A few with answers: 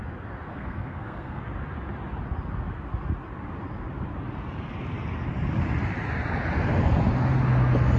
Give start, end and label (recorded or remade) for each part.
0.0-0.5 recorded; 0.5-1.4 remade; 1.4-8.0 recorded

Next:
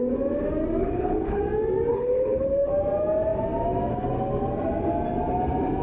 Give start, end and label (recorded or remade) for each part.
0.0-0.8 recorded; 0.8-1.4 remade; 1.4-1.9 recorded; 1.9-2.7 remade; 2.7-5.8 recorded

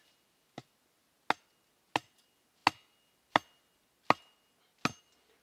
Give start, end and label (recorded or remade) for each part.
0.0-5.4 recorded

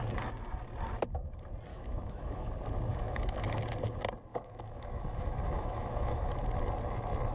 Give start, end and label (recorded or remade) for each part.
0.0-1.7 recorded; 1.7-2.5 remade; 2.5-2.9 recorded; 2.9-3.6 remade; 3.6-4.3 recorded; 4.3-6.4 remade; 6.4-7.3 recorded

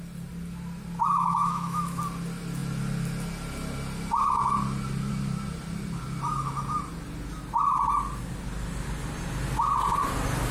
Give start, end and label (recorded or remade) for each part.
0.0-1.1 recorded; 1.1-2.0 remade; 2.0-10.5 recorded

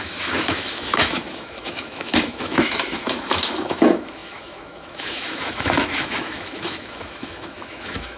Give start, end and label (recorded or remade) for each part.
0.0-8.2 remade

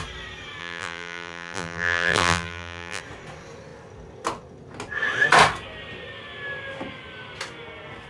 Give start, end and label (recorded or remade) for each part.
0.0-0.6 recorded; 0.6-3.0 remade; 3.0-8.1 recorded

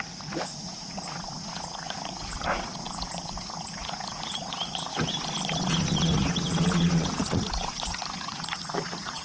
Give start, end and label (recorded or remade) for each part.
0.0-4.9 remade; 4.9-5.7 recorded; 5.7-9.2 remade